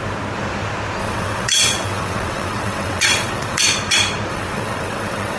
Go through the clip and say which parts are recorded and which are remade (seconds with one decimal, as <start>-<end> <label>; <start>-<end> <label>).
0.0-1.0 recorded; 1.0-3.6 remade; 3.6-4.3 recorded; 4.3-5.4 remade